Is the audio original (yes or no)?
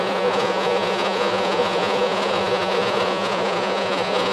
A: no